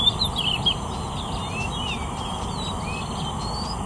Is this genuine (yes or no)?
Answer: yes